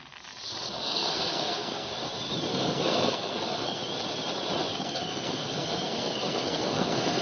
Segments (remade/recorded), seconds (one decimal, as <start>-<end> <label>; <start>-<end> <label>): 0.0-0.7 recorded; 0.7-1.9 remade; 1.9-2.5 recorded; 2.5-3.8 remade; 3.8-4.7 recorded; 4.7-7.2 remade